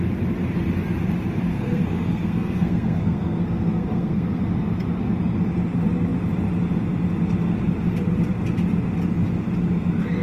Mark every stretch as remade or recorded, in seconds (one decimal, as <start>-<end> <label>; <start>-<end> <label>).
0.0-1.5 recorded; 1.5-4.4 remade; 4.4-10.2 recorded